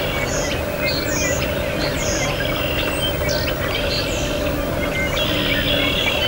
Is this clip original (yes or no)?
yes